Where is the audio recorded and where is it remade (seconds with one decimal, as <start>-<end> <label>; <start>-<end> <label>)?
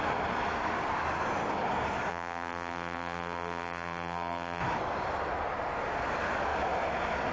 0.0-2.1 recorded; 2.1-4.6 remade; 4.6-7.3 recorded